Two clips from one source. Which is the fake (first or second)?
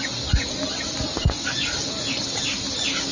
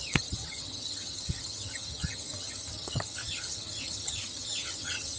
second